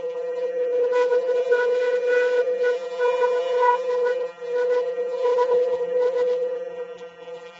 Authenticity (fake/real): fake